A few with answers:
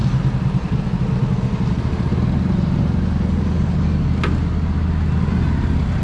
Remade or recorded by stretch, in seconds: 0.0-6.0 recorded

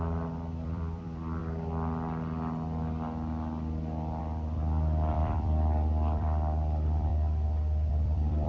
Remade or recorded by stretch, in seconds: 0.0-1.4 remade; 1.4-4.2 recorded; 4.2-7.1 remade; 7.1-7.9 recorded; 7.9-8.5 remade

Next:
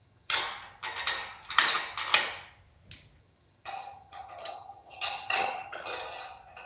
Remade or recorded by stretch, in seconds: 0.0-0.4 remade; 0.4-3.2 recorded; 3.2-5.9 remade; 5.9-6.7 recorded

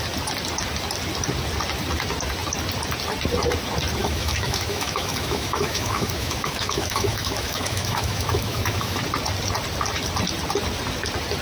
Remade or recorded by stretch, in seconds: 0.0-4.0 recorded; 4.0-9.0 remade; 9.0-11.4 recorded

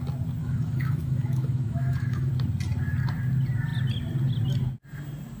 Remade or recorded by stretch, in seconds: 0.0-0.4 recorded; 0.4-2.3 remade; 2.3-5.4 recorded